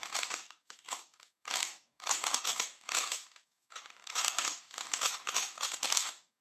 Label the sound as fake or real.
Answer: fake